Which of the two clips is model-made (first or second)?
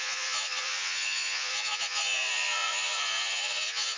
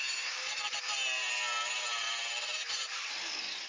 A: first